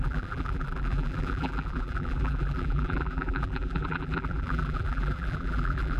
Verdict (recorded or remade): remade